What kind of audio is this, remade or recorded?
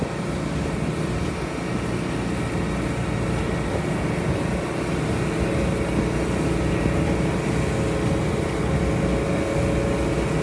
recorded